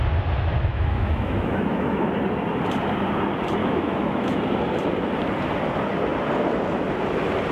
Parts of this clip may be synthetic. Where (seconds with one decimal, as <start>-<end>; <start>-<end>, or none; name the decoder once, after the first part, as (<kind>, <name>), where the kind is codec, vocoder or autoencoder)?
0.7-2.1 (autoencoder, DAC-VAE); 3.6-4.4